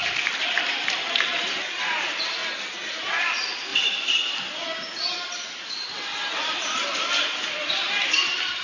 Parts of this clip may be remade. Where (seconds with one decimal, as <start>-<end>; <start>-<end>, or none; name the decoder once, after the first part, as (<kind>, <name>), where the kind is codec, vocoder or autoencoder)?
0.0-2.4 (vocoder, BigVGAN v2); 3.2-8.6